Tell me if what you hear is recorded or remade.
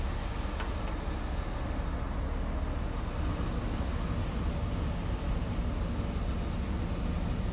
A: recorded